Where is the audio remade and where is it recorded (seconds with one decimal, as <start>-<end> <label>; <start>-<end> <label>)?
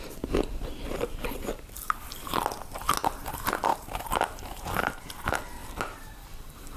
0.0-0.5 recorded; 0.5-2.0 remade; 2.0-3.7 recorded; 3.7-5.0 remade; 5.0-5.6 recorded; 5.6-6.8 remade